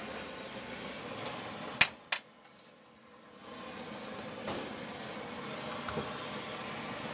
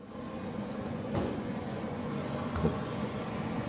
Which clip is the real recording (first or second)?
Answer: first